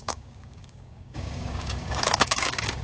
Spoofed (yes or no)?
yes